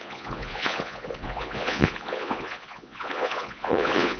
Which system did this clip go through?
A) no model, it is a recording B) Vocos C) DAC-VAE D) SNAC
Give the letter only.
B